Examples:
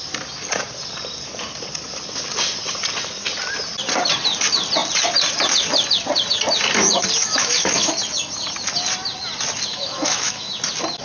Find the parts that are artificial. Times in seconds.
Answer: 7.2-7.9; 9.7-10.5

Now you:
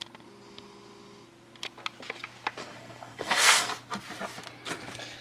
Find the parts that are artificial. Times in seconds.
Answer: 2.6-3.7

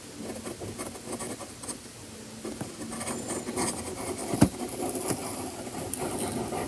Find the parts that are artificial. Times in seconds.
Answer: none

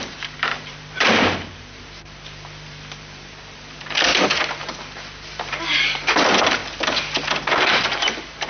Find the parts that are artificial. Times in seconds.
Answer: 0.0-4.1; 4.6-6.6; 7.5-8.5

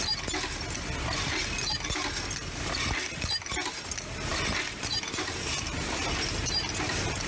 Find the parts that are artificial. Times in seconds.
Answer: none

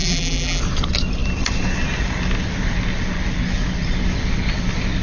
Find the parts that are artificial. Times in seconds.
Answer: 0.0-0.6